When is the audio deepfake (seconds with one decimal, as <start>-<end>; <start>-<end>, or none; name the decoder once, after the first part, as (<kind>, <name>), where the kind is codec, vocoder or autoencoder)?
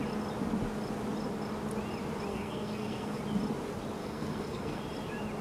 2.3-3.2 (codec, SNAC); 4.0-4.8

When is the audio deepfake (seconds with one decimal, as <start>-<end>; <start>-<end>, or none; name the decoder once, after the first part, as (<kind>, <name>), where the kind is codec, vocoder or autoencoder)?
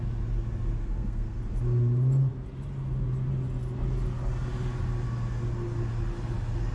0.8-1.4 (codec, SNAC)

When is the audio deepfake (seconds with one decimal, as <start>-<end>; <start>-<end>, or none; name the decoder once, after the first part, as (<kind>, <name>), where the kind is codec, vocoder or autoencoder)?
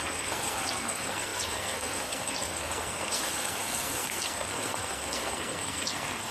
0.0-6.3 (codec, SNAC)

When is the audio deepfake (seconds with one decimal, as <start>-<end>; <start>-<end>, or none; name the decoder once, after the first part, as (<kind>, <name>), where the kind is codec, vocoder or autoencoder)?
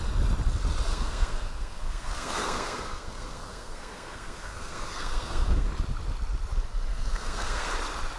0.9-5.7 (codec, SNAC); 6.9-7.7